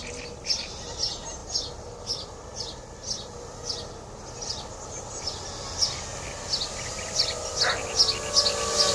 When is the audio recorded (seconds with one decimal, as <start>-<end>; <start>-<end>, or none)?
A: 0.0-8.9